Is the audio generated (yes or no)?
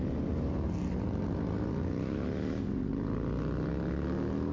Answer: no